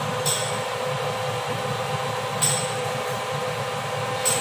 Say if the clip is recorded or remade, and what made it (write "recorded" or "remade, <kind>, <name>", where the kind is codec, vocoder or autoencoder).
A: recorded